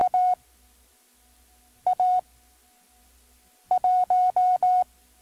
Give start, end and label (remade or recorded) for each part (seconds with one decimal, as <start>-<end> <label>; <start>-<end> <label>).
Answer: 0.0-5.2 recorded